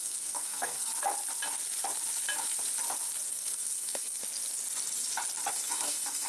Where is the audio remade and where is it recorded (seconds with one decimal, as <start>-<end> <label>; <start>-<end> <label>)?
0.0-0.9 remade; 0.9-3.3 recorded; 3.3-4.2 remade; 4.2-5.5 recorded; 5.5-6.3 remade